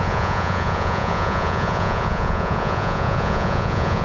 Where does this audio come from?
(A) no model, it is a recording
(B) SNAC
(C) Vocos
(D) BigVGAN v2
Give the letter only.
C